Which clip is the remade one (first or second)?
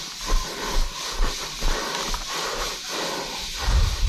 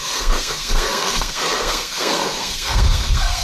second